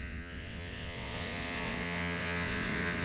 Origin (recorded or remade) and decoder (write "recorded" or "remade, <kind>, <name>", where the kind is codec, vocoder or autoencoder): remade, vocoder, WaveNeXt